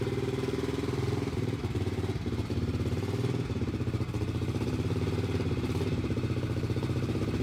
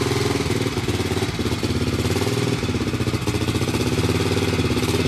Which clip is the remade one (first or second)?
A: first